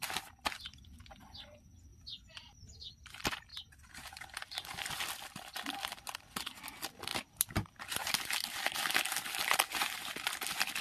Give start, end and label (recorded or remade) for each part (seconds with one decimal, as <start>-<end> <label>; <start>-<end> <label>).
0.0-10.8 recorded